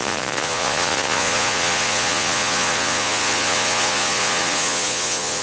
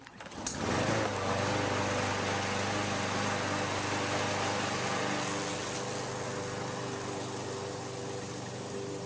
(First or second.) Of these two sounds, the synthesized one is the first